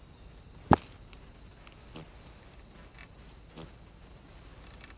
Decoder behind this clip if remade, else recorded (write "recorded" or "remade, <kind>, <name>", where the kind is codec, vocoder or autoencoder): recorded